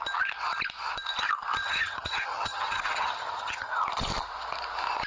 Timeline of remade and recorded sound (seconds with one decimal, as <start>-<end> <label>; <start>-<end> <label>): 0.0-1.6 recorded; 1.6-3.7 remade; 3.7-5.1 recorded